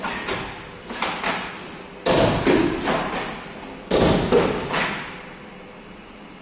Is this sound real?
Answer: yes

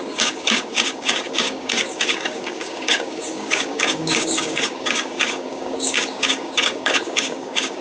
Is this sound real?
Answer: no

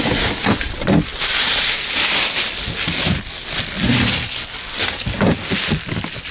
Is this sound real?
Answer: yes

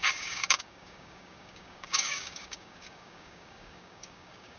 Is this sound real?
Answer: no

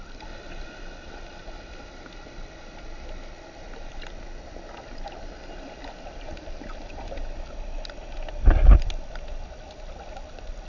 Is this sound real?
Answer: yes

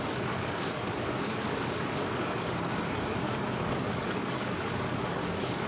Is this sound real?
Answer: no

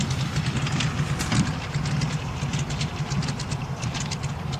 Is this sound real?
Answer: yes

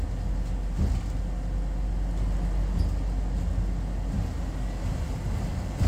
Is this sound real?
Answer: yes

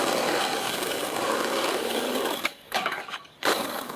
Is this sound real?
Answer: no